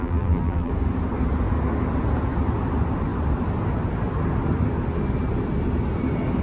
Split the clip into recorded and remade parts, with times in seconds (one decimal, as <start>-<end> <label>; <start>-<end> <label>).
0.0-0.7 remade; 0.7-6.4 recorded